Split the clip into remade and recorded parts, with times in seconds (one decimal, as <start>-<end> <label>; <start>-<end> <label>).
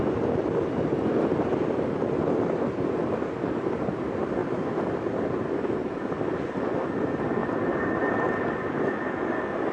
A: 0.0-9.7 recorded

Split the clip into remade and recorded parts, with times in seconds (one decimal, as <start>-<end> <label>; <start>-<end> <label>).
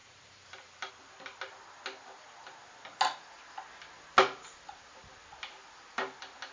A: 0.0-6.5 recorded